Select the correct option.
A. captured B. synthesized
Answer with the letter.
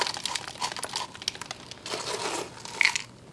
A